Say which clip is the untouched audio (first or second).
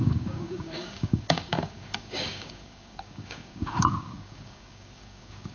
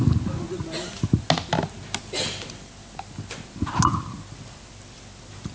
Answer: second